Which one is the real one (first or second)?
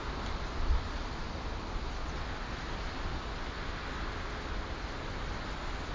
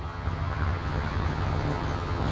first